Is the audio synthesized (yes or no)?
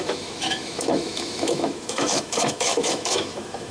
yes